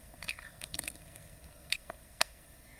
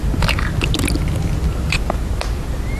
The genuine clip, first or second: second